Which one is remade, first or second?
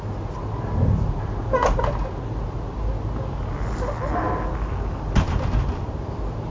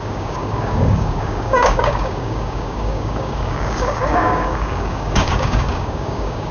second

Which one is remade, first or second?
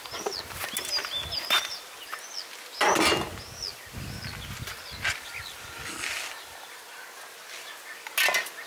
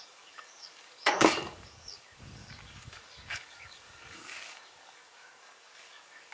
second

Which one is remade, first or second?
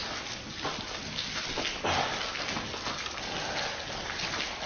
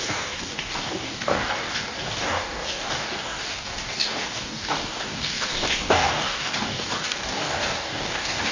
second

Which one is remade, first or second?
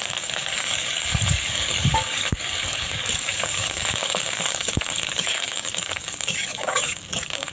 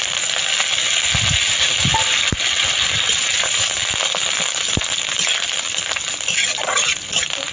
first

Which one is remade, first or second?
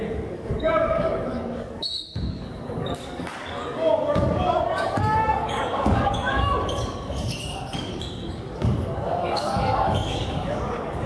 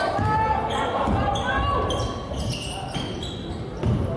first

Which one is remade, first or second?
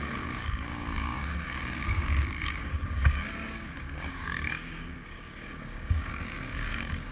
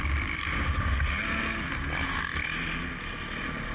first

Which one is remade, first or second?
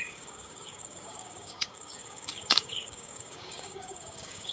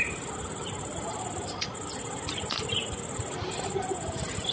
first